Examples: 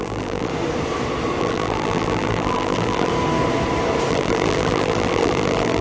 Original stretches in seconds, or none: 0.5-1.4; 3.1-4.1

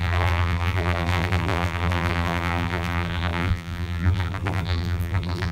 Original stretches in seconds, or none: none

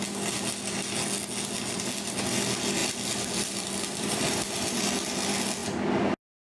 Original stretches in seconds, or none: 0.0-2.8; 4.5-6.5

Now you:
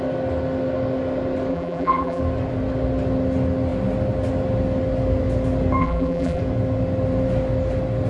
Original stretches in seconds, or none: 0.0-1.5; 2.2-5.8; 6.4-8.1

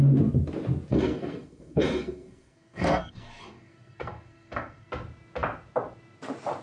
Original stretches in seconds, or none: 0.0-0.9; 4.9-6.6

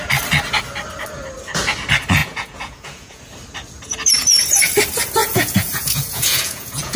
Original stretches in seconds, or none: 0.0-2.2; 3.2-5.2